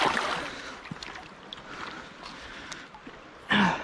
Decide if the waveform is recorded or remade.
recorded